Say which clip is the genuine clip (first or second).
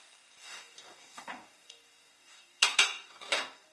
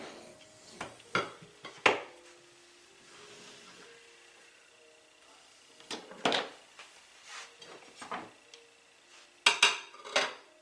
second